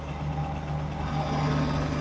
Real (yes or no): yes